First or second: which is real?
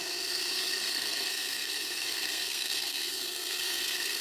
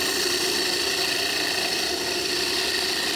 second